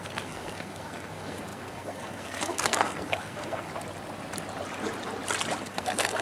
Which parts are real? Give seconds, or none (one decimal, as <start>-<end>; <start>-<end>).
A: 3.7-5.6